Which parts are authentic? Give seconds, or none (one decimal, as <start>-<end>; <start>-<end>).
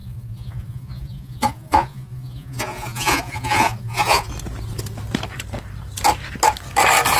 4.3-7.2